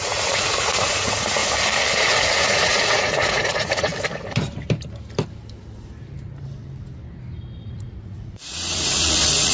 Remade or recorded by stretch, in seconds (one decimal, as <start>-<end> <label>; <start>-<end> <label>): 0.0-1.4 remade; 1.4-2.0 recorded; 2.0-3.9 remade; 3.9-7.6 recorded; 7.6-9.5 remade